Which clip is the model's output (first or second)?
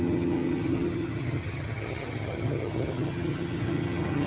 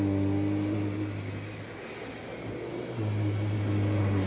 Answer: first